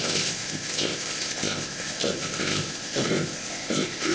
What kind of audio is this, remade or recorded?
remade